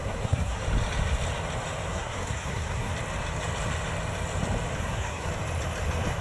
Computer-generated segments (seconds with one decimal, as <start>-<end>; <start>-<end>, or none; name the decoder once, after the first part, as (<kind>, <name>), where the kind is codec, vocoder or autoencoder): 0.0-0.6 (codec, SNAC); 1.9-2.9; 4.8-5.3

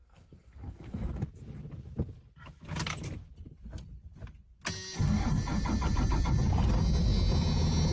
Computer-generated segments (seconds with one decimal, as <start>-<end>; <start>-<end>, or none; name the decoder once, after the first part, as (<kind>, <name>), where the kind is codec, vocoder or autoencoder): 0.0-1.1 (codec, SNAC)

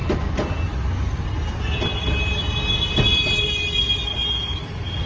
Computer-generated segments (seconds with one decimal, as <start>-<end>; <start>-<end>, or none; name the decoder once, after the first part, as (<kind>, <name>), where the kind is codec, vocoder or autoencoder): none

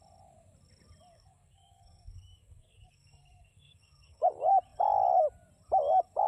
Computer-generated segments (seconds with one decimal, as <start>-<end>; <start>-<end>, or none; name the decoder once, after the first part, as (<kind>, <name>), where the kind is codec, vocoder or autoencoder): 1.1-4.3 (codec, SNAC)

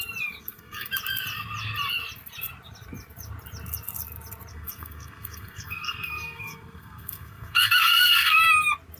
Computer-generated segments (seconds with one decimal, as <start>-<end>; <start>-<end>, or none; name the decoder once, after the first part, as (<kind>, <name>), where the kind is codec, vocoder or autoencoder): 0.4-0.9 (codec, SNAC); 4.5-8.4

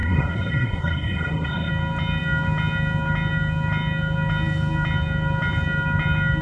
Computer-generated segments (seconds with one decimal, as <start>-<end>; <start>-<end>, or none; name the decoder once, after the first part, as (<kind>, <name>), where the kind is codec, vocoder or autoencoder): 0.0-1.7 (codec, SNAC)

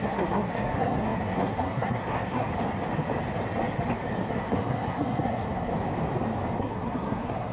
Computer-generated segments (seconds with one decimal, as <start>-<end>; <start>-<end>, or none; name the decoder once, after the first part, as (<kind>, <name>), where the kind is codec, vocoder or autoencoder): 0.0-2.5 (codec, SNAC); 4.3-5.7; 6.6-7.5